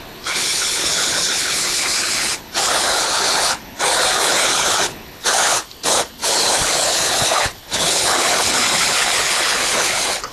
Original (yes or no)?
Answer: no